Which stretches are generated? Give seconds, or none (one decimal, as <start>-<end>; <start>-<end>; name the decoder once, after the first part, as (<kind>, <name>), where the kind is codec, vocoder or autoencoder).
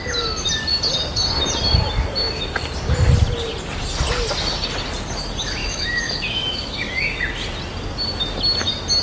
5.6-7.2 (autoencoder, DAC-VAE)